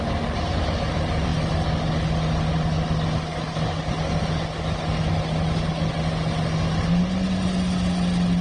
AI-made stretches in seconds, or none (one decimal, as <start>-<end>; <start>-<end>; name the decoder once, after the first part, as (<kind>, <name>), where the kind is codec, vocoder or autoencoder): none